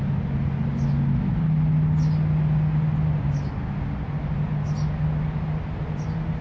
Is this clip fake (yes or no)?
no